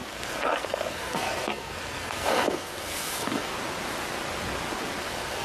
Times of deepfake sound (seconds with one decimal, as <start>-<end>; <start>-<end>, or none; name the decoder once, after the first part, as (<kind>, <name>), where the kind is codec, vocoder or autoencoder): 0.0-3.5 (codec, SNAC); 5.0-5.4